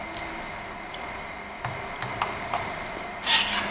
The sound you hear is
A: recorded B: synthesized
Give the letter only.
A